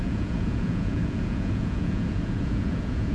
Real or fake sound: fake